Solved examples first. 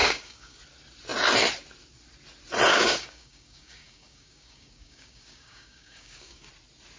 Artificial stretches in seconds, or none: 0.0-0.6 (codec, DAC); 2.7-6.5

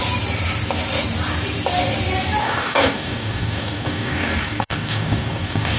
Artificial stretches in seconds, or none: 2.4-5.8 (codec, DAC)

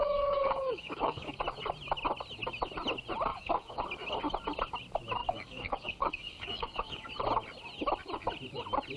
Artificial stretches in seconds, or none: 0.0-1.4 (codec, DAC); 3.3-3.8; 5.2-7.1

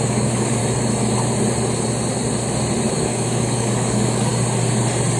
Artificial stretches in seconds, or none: 0.0-0.6 (codec, DAC); 2.9-4.3

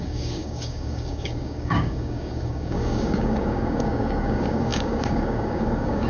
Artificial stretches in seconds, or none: 0.0-6.1 (codec, DAC)

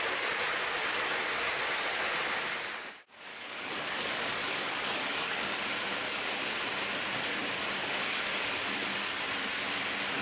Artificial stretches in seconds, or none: 3.3-5.6 (codec, DAC); 7.8-9.2

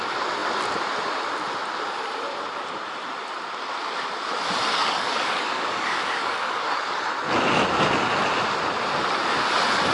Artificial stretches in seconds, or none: 4.7-7.0 (codec, DAC)

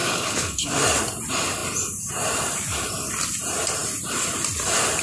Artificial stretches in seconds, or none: 0.0-0.8 (codec, DAC)